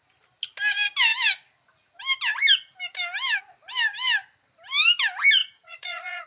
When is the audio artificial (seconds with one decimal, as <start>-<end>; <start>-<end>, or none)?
5.4-6.3